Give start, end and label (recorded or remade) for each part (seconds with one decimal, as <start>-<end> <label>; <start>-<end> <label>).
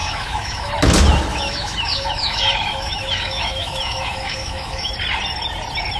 0.0-0.7 remade; 0.7-1.3 recorded; 1.3-4.9 remade; 4.9-6.0 recorded